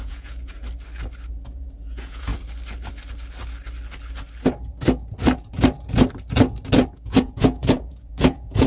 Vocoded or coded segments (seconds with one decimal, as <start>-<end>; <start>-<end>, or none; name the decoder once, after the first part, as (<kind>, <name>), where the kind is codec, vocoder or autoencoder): 0.0-0.6 (vocoder, Vocos); 1.3-2.3; 6.9-8.7